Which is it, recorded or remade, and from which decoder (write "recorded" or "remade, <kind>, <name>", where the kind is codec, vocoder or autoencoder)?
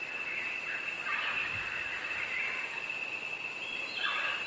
recorded